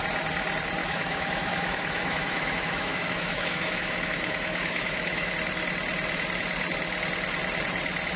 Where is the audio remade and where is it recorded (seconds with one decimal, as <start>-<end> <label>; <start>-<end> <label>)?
0.0-0.8 recorded; 0.8-5.3 remade; 5.3-8.2 recorded